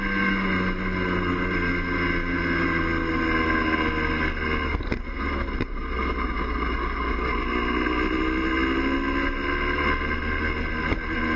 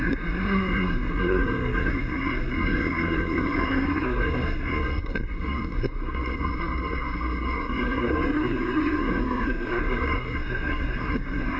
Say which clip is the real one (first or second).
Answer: first